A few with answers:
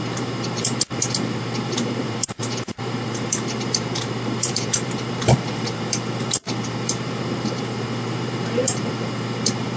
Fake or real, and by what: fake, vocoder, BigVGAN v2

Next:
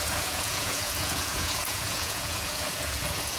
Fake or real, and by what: fake, vocoder, Vocos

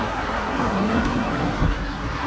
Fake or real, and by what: fake, codec, SNAC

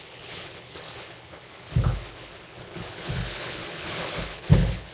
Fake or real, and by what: fake, codec, HILCodec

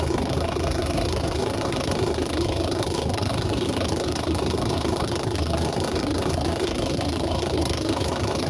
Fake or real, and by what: fake, codec, SNAC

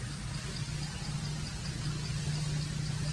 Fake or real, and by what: real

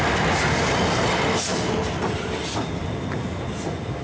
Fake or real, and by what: real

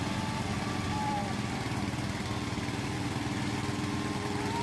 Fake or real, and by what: real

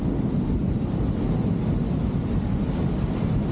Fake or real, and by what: real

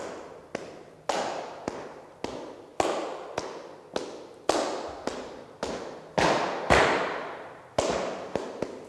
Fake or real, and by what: real